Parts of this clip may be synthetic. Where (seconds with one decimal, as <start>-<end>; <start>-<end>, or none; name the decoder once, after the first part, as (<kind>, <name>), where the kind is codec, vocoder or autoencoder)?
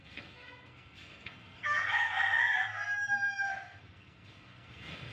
0.0-5.1 (codec, SNAC)